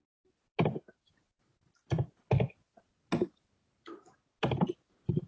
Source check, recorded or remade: recorded